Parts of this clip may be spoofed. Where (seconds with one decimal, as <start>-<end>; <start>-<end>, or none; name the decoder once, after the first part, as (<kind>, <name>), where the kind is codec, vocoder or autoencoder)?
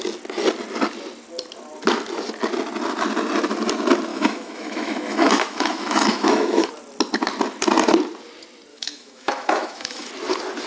4.1-6.7 (autoencoder, DAC-VAE); 8.7-10.1